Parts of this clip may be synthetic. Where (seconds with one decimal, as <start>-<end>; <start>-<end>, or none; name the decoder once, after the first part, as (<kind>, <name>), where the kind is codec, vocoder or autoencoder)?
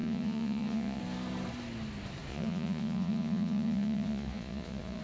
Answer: 0.0-1.0 (vocoder, Vocos); 2.3-5.0